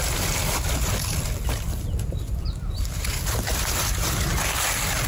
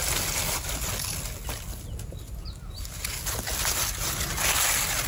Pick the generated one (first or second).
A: first